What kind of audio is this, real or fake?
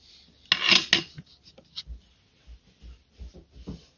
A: real